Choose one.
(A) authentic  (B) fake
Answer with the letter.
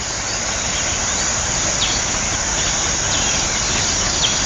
A